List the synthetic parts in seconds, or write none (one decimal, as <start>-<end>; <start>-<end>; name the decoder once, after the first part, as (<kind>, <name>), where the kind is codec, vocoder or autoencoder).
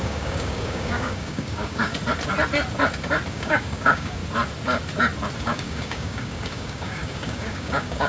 0.0-1.9 (codec, DAC); 3.3-4.2; 5.4-8.1